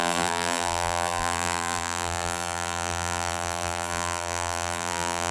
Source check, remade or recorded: remade